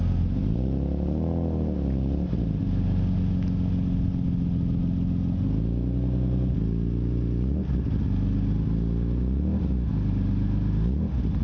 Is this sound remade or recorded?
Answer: recorded